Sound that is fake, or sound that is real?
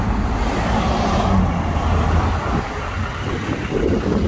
real